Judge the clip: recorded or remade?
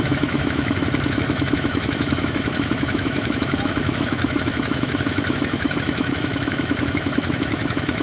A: remade